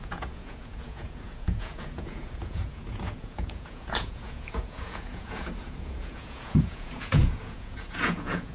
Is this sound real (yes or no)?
no